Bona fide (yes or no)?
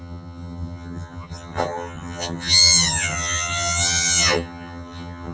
no